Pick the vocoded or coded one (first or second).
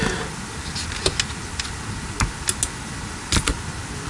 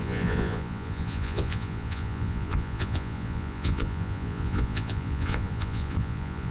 second